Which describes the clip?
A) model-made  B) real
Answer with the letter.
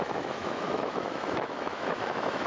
A